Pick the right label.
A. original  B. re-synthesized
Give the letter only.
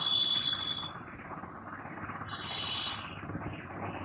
A